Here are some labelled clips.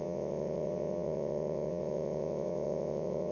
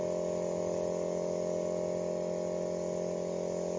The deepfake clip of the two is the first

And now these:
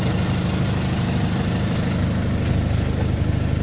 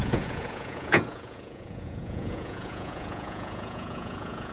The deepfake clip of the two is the second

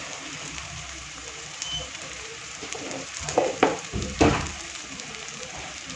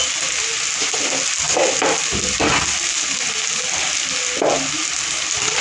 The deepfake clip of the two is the first